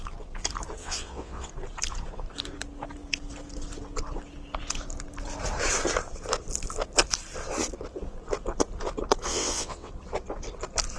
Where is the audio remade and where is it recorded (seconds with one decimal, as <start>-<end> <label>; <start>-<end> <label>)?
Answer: 0.0-0.8 recorded; 0.8-1.5 remade; 1.5-9.3 recorded; 9.3-9.9 remade; 9.9-11.0 recorded